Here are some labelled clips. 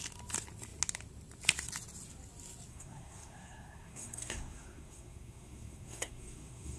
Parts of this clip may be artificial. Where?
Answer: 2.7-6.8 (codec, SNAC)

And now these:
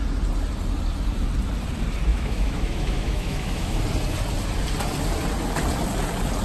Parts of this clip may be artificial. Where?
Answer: 2.1-3.8 (autoencoder, DAC-VAE)

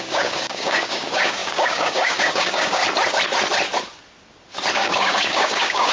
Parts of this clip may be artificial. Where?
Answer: 0.0-2.8 (codec, DAC); 4.7-5.9

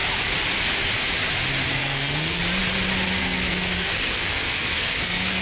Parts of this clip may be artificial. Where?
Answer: 1.7-2.4 (codec, SNAC); 3.2-5.4

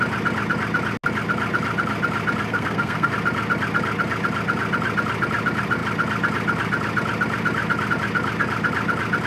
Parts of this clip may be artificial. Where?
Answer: 2.5-3.1 (codec, SNAC)

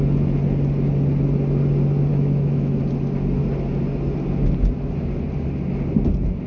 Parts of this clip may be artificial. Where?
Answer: 2.1-2.8 (autoencoder, DAC-VAE)